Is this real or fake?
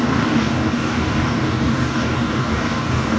fake